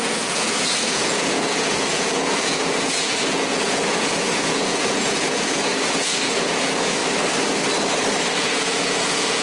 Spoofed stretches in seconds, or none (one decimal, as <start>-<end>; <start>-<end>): 0.0-7.0; 8.3-9.4